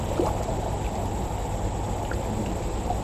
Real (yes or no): yes